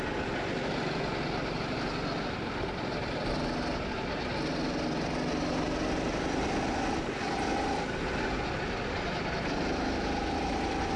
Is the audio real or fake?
real